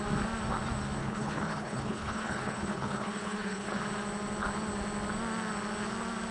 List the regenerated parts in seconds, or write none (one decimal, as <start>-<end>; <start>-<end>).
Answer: 1.0-3.8